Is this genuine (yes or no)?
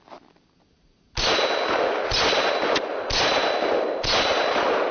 yes